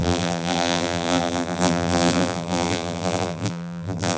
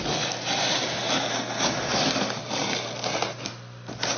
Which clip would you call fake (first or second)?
first